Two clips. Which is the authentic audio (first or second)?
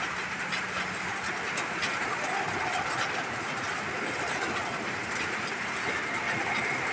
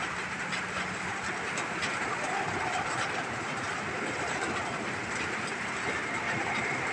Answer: first